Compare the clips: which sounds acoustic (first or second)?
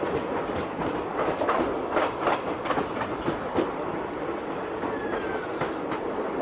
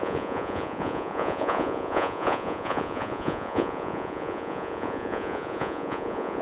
first